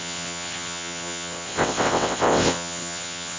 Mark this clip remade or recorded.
remade